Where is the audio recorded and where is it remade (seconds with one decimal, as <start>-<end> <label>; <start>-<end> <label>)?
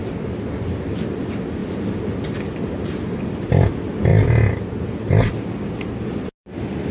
0.0-6.9 recorded